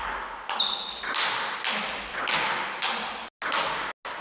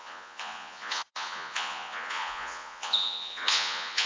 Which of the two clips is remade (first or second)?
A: second